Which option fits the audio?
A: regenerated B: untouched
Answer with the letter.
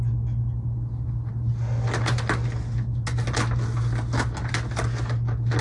B